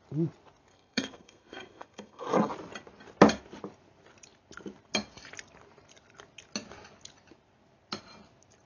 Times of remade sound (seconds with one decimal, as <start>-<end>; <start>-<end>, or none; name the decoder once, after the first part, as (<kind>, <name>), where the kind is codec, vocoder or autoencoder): 0.7-2.5 (codec, SNAC)